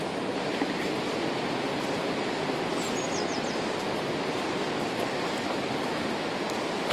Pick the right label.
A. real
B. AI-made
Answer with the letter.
A